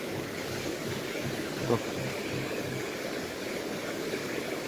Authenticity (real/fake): fake